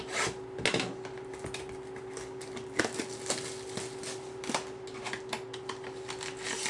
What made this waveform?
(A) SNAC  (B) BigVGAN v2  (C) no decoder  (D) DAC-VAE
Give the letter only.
C